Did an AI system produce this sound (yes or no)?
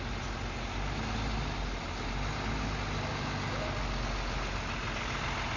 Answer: no